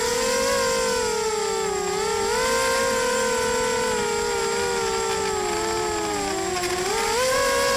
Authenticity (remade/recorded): recorded